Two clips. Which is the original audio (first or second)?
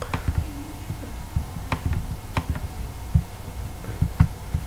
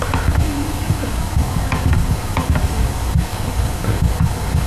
first